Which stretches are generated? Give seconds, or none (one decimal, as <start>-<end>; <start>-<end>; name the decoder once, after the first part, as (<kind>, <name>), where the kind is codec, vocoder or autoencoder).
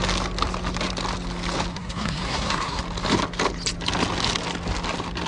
1.7-2.8 (codec, SNAC)